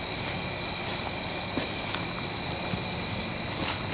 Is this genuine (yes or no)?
yes